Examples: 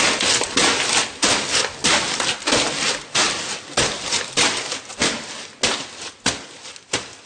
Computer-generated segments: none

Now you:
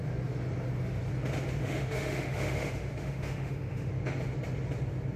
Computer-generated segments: 1.6-3.9 (autoencoder, DAC-VAE)

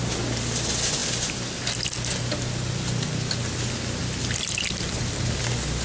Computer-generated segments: none

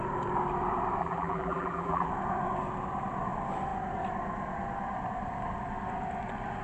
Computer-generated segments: 1.0-2.1 (vocoder, BigVGAN v2)